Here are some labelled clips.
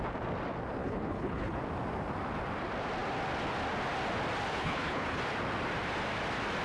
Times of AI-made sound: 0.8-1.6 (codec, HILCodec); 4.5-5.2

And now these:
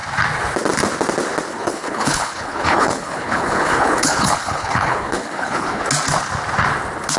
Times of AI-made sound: 1.5-5.8 (codec, HILCodec)

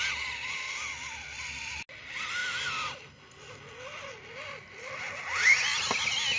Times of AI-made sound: none